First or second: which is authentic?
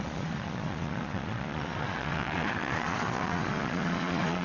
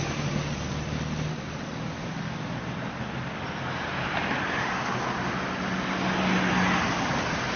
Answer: second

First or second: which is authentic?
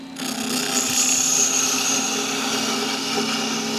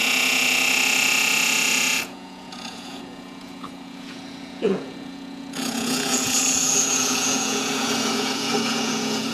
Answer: first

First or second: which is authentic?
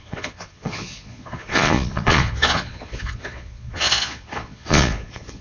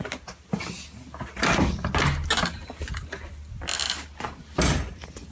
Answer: second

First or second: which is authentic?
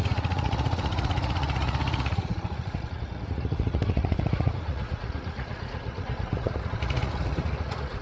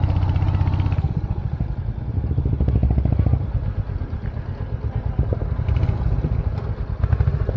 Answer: second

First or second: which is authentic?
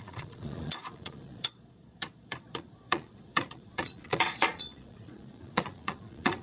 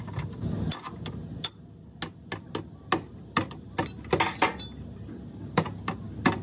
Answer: second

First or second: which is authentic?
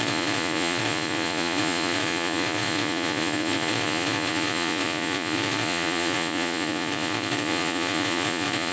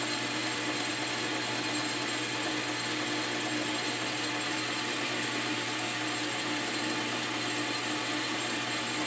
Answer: second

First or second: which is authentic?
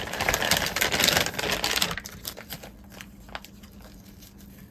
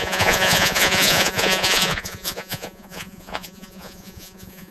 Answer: first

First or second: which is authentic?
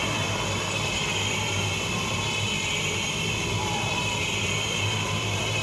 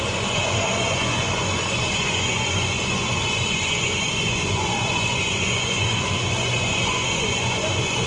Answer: first